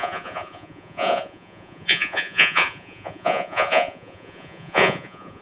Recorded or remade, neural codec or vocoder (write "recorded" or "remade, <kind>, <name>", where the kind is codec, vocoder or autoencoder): remade, vocoder, Vocos